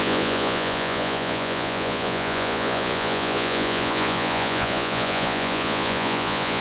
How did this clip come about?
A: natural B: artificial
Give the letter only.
B